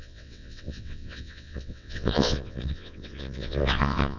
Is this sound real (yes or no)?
no